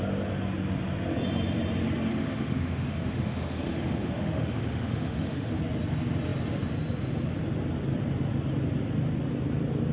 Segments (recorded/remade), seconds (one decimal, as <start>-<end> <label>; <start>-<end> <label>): 0.0-2.1 recorded; 2.1-5.6 remade; 5.6-9.9 recorded